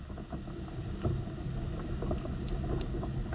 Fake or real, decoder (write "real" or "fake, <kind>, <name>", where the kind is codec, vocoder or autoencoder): real